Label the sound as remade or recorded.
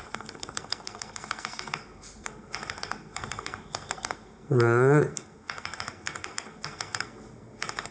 remade